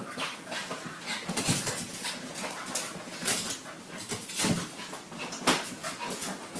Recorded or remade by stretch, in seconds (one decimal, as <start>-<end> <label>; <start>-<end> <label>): 0.0-6.6 recorded